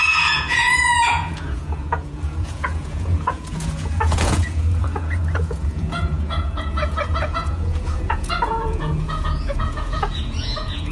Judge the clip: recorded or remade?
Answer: remade